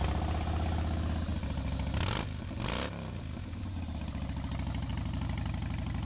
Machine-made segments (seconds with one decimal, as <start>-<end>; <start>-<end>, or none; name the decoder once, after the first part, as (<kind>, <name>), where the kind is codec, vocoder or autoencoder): none